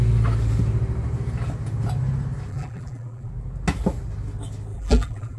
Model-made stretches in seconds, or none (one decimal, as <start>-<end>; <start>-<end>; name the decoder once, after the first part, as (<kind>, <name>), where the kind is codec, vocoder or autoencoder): 2.5-3.3 (vocoder, BigVGAN v2); 4.7-5.4